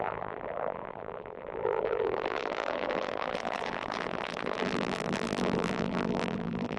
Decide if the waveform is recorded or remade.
remade